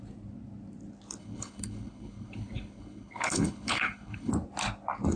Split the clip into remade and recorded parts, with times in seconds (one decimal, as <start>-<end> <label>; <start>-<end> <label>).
0.0-1.2 recorded; 1.2-4.3 remade; 4.3-5.2 recorded